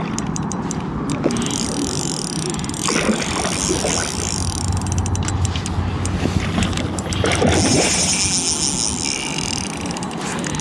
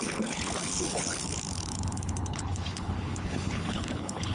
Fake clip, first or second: second